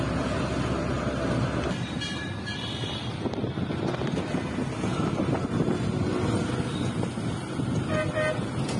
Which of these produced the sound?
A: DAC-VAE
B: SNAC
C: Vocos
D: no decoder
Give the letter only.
D